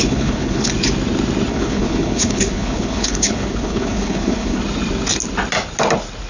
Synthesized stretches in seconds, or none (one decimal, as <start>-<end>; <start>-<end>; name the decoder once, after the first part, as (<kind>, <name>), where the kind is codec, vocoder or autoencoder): 0.0-0.7 (codec, HILCodec); 1.5-4.6